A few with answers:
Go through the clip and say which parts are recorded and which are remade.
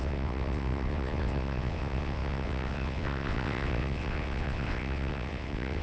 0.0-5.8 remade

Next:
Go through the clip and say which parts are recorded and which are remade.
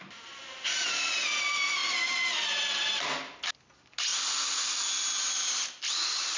0.0-6.4 recorded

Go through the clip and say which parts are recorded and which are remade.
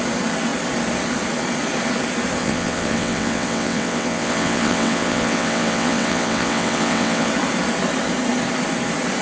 0.0-2.4 recorded; 2.4-7.3 remade; 7.3-9.2 recorded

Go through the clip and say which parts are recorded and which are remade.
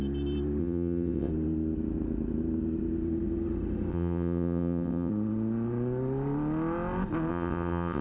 0.0-0.6 recorded; 0.6-1.3 remade; 1.3-3.9 recorded; 3.9-5.1 remade; 5.1-7.3 recorded; 7.3-8.0 remade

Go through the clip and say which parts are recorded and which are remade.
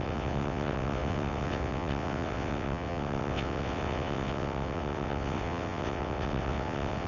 0.0-7.1 remade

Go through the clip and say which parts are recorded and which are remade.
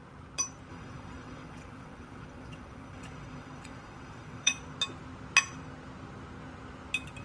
0.0-0.7 recorded; 0.7-4.5 remade; 4.5-7.2 recorded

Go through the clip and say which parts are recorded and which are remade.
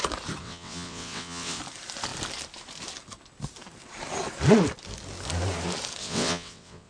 0.0-0.4 recorded; 0.4-1.6 remade; 1.6-6.0 recorded; 6.0-6.9 remade